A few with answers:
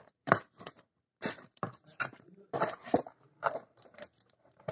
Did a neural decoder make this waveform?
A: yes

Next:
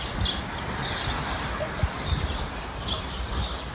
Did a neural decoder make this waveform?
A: no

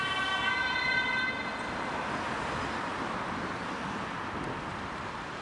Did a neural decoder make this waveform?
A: no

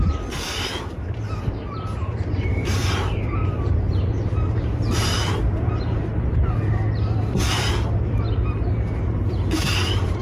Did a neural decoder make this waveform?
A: yes